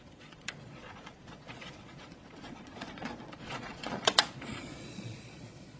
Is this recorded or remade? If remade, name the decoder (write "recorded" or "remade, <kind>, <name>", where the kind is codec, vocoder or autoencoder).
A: remade, vocoder, Vocos